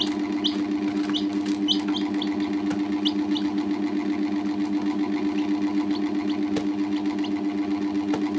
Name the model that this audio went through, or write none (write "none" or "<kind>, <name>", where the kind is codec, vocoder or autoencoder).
none